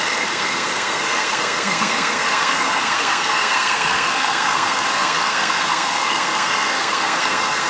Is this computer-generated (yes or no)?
yes